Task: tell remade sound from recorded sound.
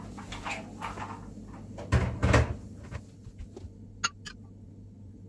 recorded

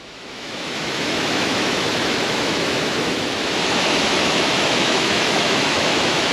remade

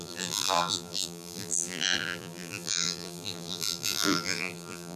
remade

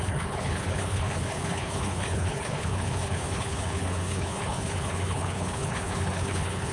remade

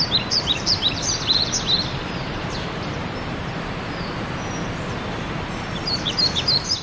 remade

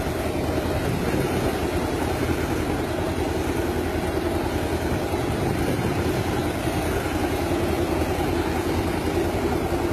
recorded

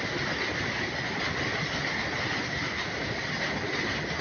recorded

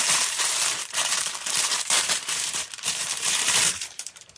remade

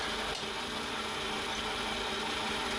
recorded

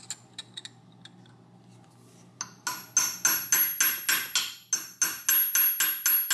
recorded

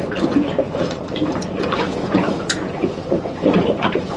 remade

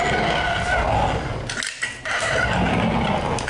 recorded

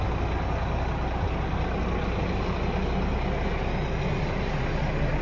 recorded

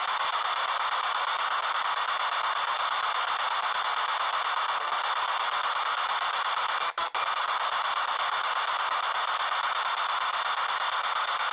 recorded